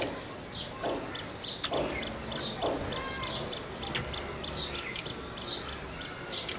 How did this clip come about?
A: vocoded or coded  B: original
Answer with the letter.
B